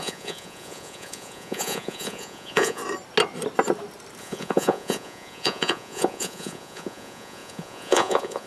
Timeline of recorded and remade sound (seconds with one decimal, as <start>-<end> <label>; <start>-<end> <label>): 0.0-2.8 remade; 2.8-4.2 recorded; 4.2-8.5 remade